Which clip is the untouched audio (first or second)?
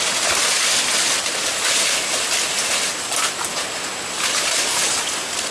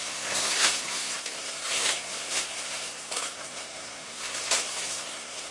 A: first